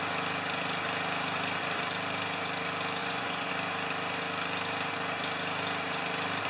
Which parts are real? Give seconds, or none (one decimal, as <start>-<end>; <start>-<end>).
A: 0.0-3.0; 3.5-6.5